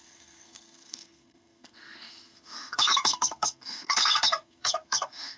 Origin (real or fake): fake